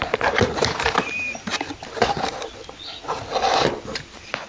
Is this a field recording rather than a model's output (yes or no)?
yes